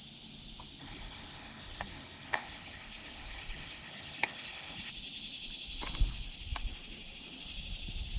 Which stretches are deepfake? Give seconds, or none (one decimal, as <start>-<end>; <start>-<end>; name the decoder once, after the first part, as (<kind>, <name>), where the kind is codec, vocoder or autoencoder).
0.8-4.9 (codec, HILCodec)